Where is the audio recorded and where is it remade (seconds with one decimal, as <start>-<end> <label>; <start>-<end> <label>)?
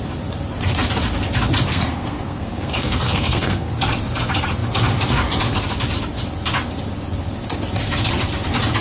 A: 0.0-1.7 recorded; 1.7-3.7 remade; 3.7-8.8 recorded